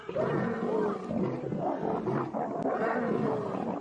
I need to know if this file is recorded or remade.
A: recorded